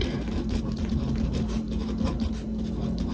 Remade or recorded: recorded